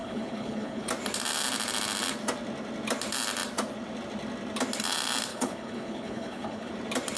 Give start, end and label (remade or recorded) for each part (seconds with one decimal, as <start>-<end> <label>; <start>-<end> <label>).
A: 0.0-0.9 remade; 0.9-5.3 recorded; 5.3-6.7 remade; 6.7-7.2 recorded